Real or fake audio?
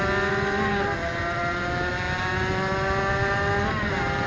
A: real